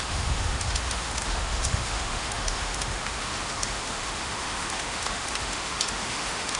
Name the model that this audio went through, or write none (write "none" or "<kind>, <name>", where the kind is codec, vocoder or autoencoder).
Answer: autoencoder, DAC-VAE